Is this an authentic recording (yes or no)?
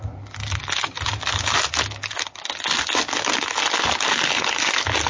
yes